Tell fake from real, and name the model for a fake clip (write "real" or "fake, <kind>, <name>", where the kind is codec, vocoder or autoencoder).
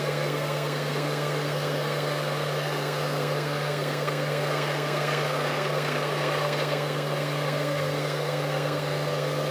fake, codec, SNAC